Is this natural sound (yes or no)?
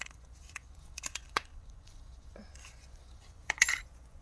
no